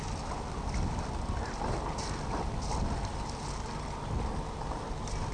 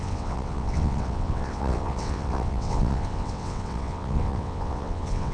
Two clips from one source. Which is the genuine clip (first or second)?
first